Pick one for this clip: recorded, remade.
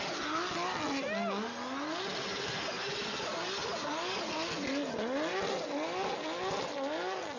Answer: recorded